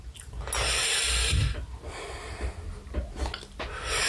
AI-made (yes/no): no